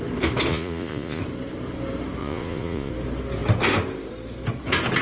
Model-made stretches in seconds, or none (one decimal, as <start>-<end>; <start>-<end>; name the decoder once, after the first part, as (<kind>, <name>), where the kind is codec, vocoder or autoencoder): 0.5-1.2 (vocoder, Vocos); 2.2-2.9